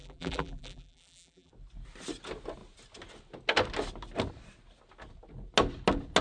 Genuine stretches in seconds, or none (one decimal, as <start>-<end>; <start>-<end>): 1.5-6.2